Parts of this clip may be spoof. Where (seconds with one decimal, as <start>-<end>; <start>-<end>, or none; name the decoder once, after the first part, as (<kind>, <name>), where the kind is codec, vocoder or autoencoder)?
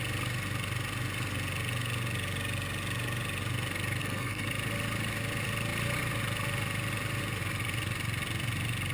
4.0-4.5 (codec, SNAC)